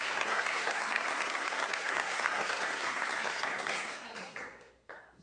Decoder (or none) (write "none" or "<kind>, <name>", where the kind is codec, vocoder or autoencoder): codec, SNAC